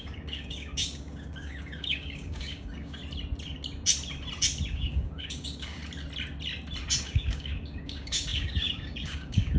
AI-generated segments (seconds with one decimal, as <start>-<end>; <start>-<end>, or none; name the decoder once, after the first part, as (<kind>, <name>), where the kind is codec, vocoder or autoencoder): 0.0-3.0 (codec, DAC); 4.7-5.8; 7.0-9.6